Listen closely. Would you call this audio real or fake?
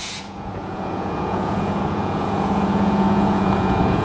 fake